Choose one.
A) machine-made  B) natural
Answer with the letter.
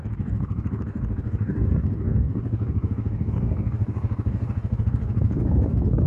A